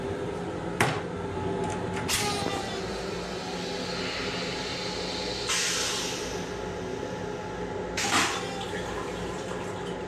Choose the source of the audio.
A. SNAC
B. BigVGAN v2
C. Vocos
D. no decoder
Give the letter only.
D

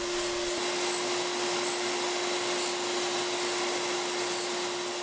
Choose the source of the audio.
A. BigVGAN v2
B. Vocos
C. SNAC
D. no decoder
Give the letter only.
D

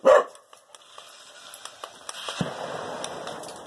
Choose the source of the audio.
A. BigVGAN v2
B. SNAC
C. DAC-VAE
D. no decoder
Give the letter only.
D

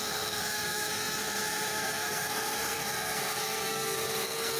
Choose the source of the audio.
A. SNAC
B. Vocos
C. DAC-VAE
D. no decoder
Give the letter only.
A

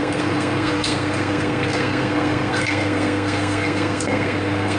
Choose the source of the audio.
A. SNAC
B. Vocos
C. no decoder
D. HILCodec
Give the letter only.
A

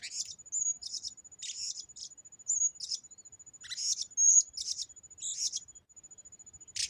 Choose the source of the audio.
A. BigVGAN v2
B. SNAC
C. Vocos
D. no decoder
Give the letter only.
D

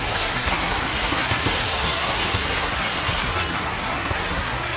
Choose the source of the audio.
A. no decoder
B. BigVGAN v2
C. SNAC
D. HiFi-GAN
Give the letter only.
C